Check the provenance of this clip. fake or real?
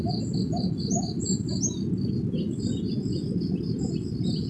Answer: real